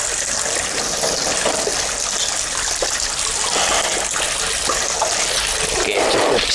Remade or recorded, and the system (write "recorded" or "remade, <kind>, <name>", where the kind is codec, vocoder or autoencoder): recorded